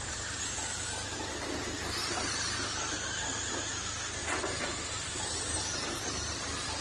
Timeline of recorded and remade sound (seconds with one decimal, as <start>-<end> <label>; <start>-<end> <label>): 0.0-6.8 recorded